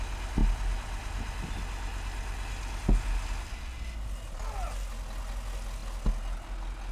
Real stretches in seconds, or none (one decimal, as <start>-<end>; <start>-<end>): 0.0-6.9